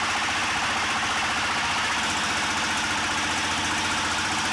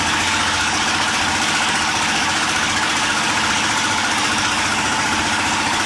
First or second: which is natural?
first